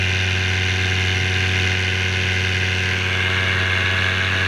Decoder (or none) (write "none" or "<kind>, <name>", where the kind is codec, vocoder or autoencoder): none